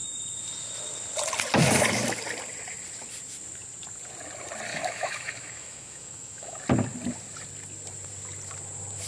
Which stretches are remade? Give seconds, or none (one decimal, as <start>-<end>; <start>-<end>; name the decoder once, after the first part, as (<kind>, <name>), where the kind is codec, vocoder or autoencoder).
4.7-6.6 (autoencoder, DAC-VAE)